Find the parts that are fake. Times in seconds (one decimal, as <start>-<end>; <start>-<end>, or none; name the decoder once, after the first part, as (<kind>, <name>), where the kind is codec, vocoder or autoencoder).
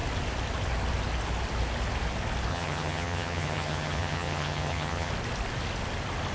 2.5-5.1 (vocoder, HiFi-GAN)